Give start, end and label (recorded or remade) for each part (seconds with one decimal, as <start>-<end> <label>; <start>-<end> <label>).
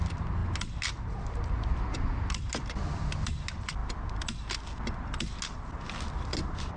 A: 0.0-6.8 recorded